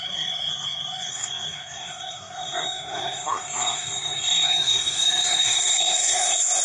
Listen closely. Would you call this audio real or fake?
fake